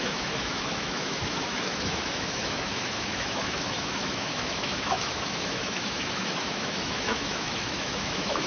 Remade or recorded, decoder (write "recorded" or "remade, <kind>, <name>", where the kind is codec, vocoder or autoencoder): remade, autoencoder, DAC-VAE